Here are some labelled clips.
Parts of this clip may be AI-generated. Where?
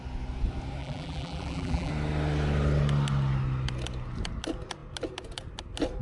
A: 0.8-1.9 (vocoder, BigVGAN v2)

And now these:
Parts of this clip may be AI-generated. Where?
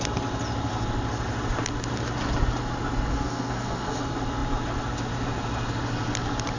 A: 3.1-4.0 (codec, SNAC)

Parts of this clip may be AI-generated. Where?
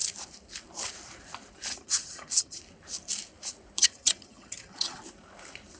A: 1.7-2.6 (vocoder, HiFi-GAN); 3.8-5.0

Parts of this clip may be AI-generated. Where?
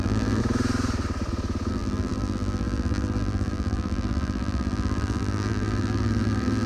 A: 0.0-0.4 (vocoder, BigVGAN v2); 1.7-6.7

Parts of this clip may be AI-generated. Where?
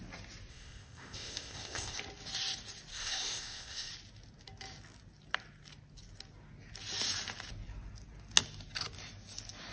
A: 0.5-2.0 (codec, ZipCodec); 2.9-3.9